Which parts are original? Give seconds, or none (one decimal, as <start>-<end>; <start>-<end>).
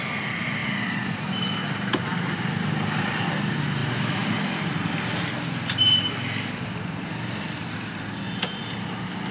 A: 0.0-9.3